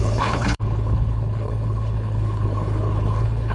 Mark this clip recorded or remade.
remade